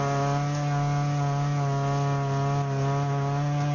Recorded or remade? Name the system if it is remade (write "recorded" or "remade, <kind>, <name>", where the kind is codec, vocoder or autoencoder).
recorded